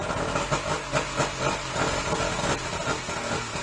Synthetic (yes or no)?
no